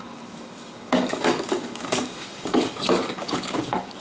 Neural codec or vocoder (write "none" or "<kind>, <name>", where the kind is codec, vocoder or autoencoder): codec, DAC